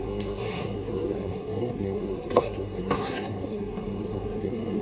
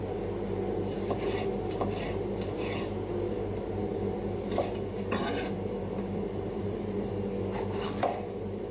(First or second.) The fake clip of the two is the first